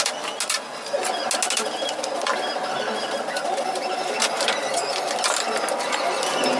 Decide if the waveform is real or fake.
real